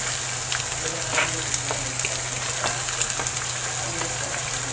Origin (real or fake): real